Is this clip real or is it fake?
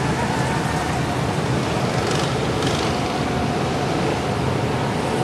real